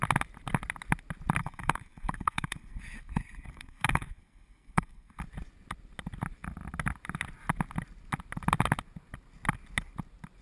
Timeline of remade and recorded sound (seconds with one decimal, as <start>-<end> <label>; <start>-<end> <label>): 0.0-1.4 recorded; 1.4-5.2 remade; 5.2-10.4 recorded